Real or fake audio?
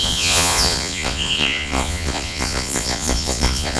fake